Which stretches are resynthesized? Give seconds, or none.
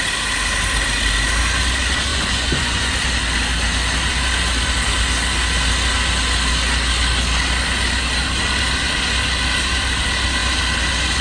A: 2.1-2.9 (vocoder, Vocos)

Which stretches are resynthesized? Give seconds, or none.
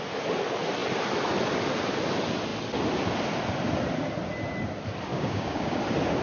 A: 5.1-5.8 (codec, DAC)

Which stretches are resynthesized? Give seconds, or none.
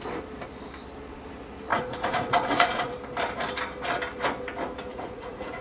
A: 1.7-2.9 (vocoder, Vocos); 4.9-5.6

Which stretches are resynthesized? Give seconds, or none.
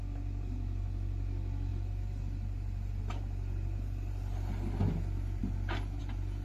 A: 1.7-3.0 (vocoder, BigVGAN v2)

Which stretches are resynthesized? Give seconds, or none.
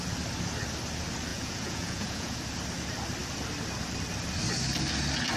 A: 1.3-2.4 (vocoder, Vocos)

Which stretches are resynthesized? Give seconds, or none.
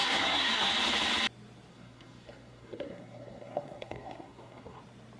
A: 0.0-0.7 (codec, SNAC); 1.7-4.8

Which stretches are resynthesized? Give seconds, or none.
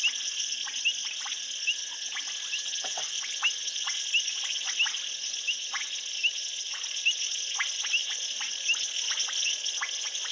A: none